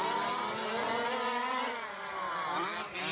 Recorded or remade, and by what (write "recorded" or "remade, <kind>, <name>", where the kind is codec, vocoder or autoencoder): recorded